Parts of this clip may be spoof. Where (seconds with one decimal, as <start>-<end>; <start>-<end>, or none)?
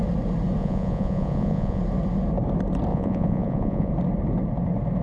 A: 0.6-1.8; 2.9-3.9